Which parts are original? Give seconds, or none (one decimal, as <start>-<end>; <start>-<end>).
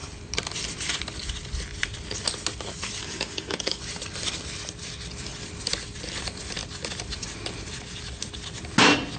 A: 0.0-3.0; 3.8-9.2